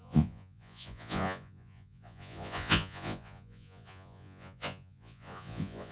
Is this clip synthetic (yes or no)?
yes